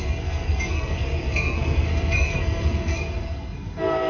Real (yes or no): no